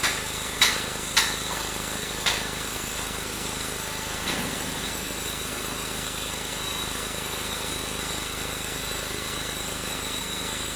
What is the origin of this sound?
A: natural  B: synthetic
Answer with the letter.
B